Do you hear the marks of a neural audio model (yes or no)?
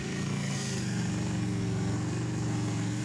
yes